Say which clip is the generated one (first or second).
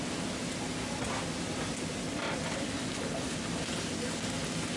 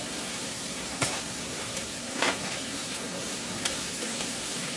second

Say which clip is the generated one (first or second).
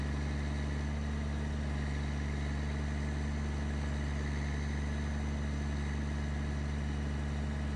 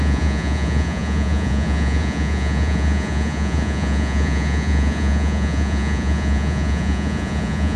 second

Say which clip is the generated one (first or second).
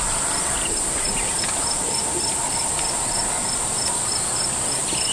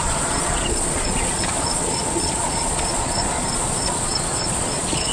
second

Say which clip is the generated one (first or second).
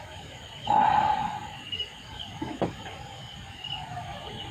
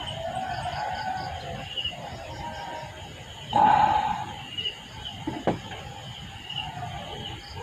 first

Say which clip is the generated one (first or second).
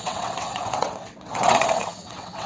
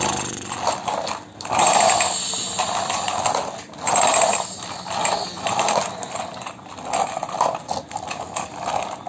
first